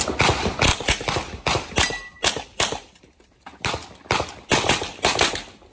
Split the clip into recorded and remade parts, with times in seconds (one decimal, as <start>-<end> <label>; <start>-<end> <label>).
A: 0.0-5.7 recorded